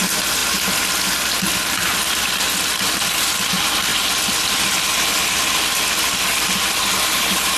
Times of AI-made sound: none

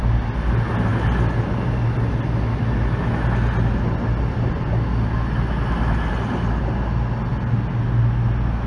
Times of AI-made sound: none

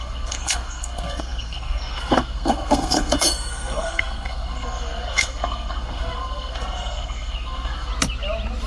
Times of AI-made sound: 0.0-7.9

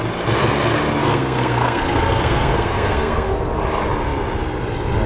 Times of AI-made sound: 1.0-3.5